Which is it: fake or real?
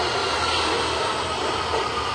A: real